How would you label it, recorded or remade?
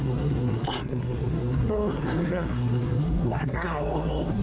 remade